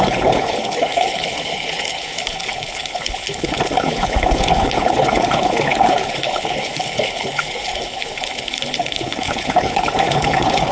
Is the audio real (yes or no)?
no